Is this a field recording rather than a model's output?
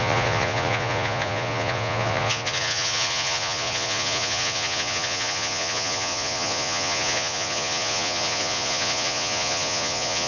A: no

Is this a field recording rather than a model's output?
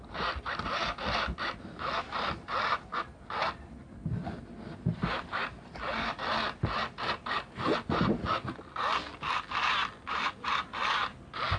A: yes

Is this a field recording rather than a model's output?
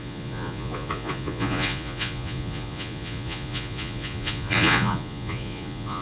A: no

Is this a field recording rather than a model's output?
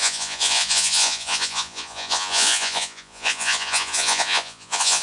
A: no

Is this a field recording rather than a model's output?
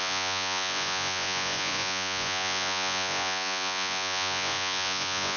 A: no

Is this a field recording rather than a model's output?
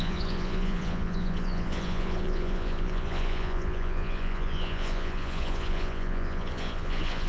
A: no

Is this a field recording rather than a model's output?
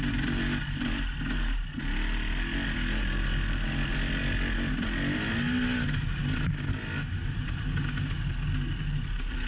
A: yes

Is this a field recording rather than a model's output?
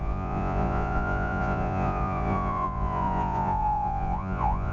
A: no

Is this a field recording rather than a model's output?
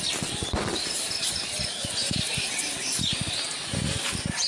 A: yes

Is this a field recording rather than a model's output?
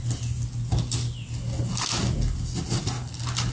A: yes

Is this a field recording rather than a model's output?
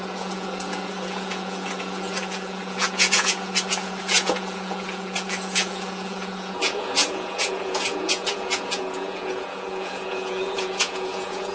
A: no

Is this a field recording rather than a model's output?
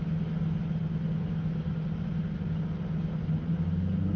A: yes